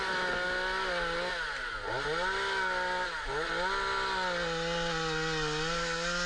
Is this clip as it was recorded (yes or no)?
yes